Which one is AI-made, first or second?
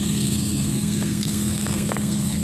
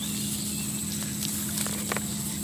first